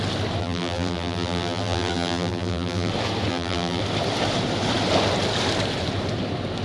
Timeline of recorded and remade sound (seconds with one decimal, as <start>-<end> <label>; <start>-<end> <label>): 0.0-0.4 recorded; 0.4-2.9 remade; 2.9-3.3 recorded; 3.3-3.8 remade; 3.8-6.6 recorded